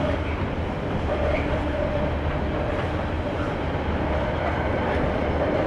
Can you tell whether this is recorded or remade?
recorded